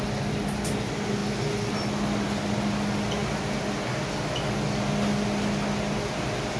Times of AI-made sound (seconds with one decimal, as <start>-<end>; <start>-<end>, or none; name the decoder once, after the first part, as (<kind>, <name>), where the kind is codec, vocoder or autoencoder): none